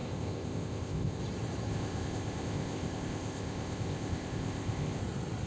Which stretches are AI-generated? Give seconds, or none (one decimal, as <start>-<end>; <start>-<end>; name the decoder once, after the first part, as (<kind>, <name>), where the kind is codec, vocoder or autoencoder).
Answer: 0.0-1.2 (codec, ZipCodec); 1.7-5.0